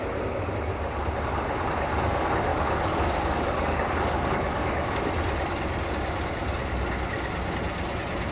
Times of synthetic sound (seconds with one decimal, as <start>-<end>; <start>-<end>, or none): 2.5-4.9